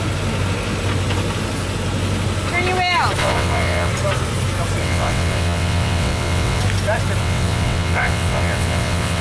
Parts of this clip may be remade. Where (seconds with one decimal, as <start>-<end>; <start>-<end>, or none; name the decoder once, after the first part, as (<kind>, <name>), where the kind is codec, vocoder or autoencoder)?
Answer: 3.2-3.9 (vocoder, WaveNeXt); 4.8-6.6; 7.2-9.2